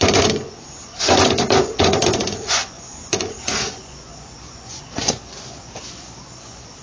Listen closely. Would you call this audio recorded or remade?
remade